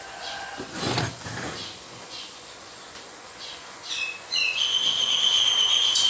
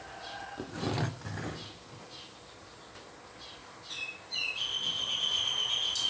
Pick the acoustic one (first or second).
second